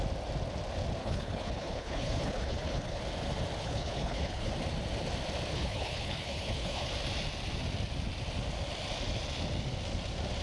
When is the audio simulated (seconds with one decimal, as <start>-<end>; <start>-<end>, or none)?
1.0-3.0; 3.6-4.5; 5.5-6.9